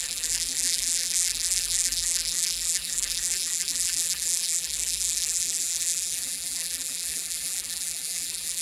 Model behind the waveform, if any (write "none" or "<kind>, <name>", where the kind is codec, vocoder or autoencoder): vocoder, BigVGAN v2